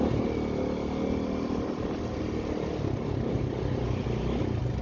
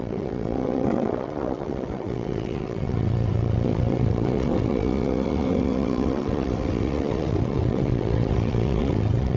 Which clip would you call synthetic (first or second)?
second